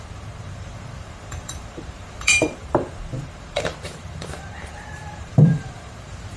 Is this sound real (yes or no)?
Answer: no